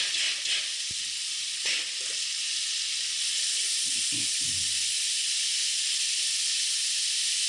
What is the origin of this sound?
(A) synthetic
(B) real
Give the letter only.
B